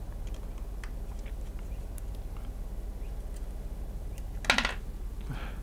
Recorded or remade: recorded